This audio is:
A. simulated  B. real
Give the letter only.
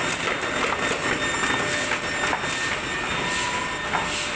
B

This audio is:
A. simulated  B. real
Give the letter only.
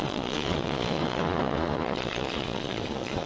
A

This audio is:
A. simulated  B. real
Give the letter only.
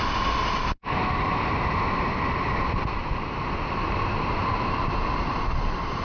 B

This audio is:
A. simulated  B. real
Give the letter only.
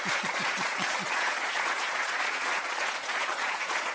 A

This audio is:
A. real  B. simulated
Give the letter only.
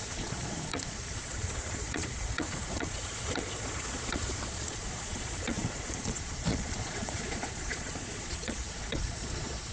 B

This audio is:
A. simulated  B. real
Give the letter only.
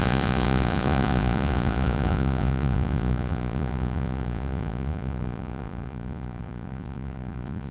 A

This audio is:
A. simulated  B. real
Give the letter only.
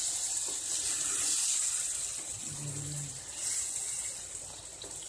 B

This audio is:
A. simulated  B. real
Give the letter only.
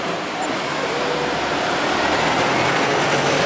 B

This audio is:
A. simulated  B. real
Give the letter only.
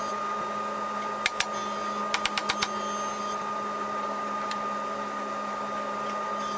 B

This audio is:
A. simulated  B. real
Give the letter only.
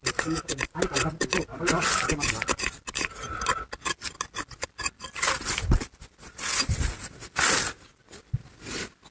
B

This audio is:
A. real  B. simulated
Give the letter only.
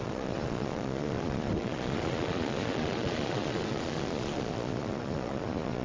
B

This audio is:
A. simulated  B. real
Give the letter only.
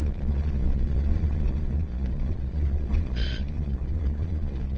A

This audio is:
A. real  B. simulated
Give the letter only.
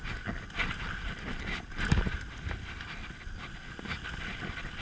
A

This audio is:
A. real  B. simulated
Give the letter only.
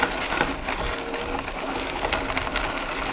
A